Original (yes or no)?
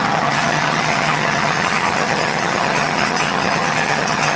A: no